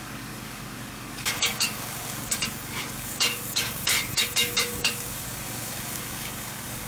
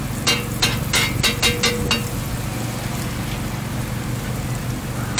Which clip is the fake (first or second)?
first